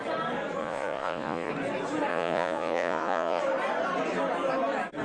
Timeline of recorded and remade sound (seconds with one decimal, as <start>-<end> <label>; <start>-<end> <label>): 0.0-0.6 recorded; 0.6-1.5 remade; 1.5-2.1 recorded; 2.1-3.4 remade; 3.4-5.0 recorded